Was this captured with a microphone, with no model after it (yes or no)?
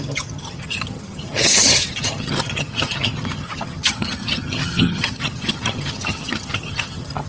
no